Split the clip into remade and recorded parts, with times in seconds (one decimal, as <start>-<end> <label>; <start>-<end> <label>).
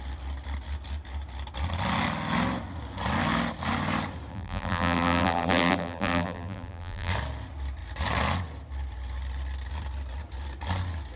0.0-4.3 recorded; 4.3-7.1 remade; 7.1-11.2 recorded